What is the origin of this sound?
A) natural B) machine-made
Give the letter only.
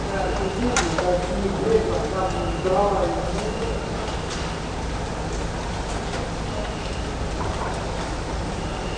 A